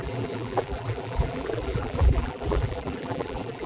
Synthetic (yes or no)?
yes